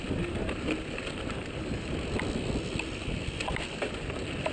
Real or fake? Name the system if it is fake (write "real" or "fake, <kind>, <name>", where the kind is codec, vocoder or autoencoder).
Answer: real